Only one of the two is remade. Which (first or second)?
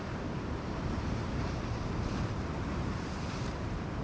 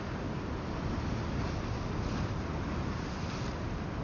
first